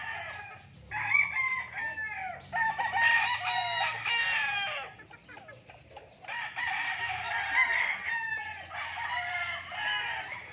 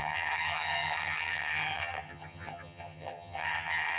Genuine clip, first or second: first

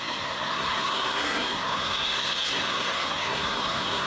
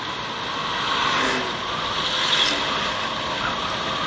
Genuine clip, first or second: second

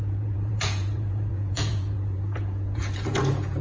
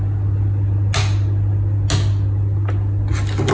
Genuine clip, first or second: second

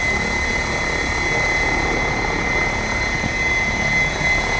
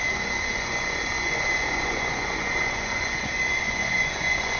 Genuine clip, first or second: first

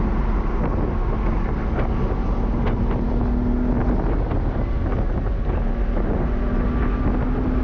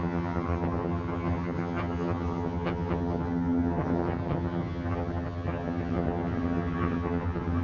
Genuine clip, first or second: first